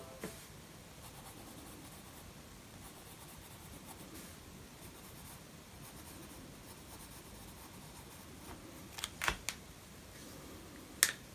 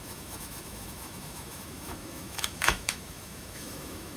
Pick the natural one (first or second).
first